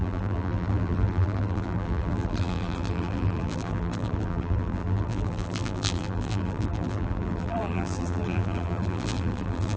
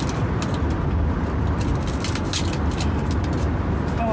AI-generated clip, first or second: first